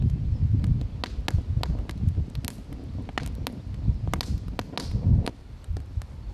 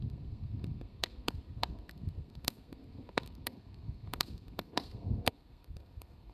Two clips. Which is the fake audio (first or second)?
second